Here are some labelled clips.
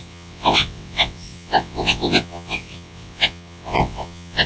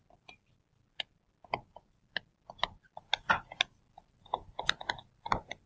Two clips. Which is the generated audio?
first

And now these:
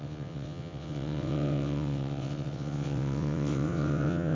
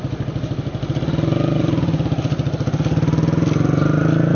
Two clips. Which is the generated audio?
first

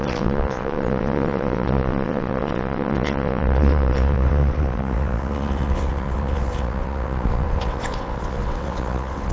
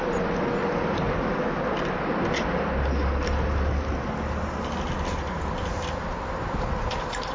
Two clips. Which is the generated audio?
first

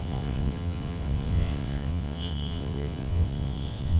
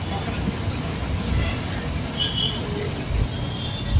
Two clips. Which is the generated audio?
first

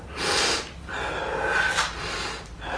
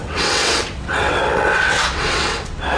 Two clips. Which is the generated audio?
second